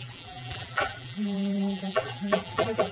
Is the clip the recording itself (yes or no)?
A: no